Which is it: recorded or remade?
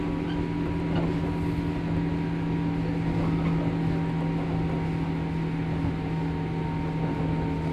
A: recorded